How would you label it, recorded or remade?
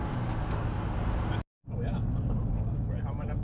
recorded